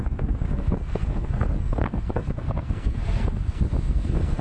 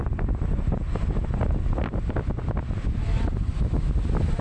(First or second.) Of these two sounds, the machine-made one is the first